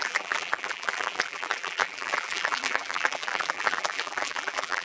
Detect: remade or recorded remade